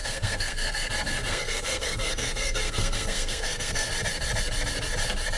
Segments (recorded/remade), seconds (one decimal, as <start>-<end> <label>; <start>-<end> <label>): 0.0-0.9 remade; 0.9-1.3 recorded; 1.3-3.9 remade; 3.9-5.4 recorded